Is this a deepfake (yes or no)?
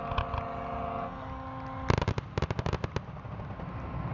no